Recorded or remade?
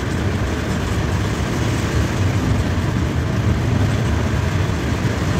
recorded